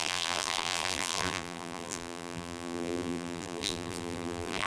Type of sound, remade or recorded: remade